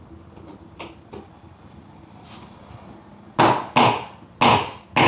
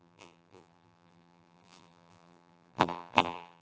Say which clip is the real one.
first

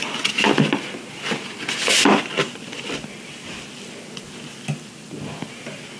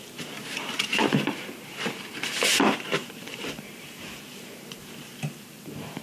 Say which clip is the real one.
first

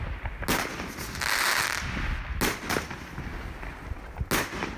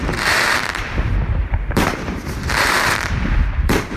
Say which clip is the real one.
first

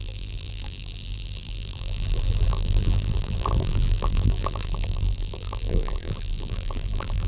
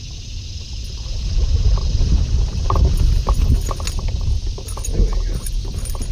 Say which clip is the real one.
second